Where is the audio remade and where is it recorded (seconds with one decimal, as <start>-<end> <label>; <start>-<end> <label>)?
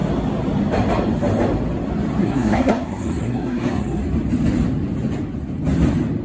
0.0-2.2 recorded; 2.2-4.0 remade; 4.0-6.2 recorded